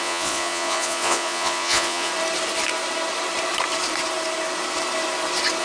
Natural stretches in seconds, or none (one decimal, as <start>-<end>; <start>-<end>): 2.1-5.6